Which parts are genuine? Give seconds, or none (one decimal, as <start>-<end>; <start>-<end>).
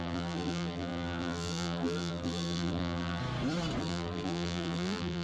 3.2-3.8